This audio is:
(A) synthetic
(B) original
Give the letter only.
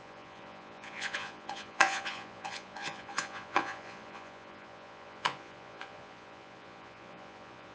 A